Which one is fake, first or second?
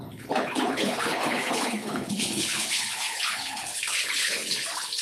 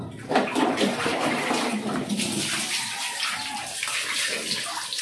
first